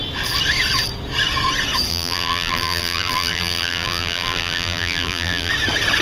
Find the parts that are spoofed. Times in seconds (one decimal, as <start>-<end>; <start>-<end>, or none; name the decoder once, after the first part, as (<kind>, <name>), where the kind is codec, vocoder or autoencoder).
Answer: 1.9-5.5 (vocoder, BigVGAN v2)